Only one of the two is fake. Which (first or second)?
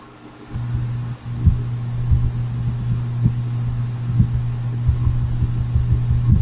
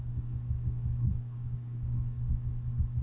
second